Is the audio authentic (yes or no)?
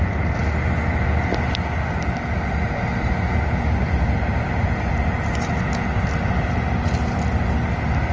yes